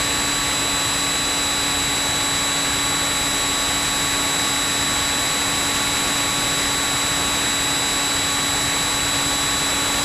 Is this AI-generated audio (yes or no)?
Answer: no